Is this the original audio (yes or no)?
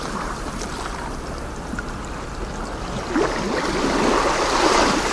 yes